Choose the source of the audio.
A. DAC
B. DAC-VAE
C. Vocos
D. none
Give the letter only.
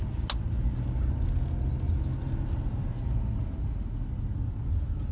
D